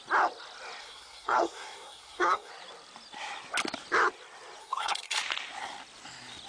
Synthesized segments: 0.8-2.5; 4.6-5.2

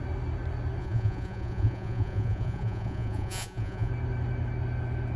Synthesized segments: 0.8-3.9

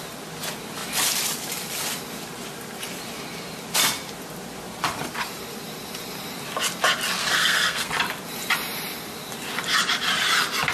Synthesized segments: 7.2-7.9

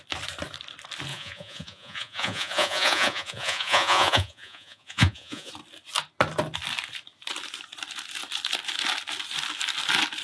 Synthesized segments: 1.1-5.5